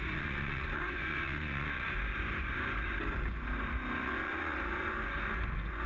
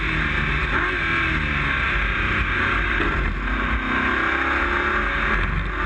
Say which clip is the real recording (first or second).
second